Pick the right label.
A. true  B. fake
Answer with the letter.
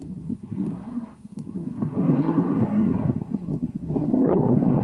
B